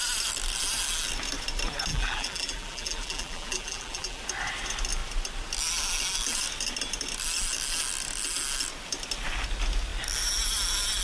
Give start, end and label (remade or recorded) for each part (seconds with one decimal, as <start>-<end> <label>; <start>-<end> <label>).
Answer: 0.0-1.9 recorded; 1.9-4.2 remade; 4.2-11.0 recorded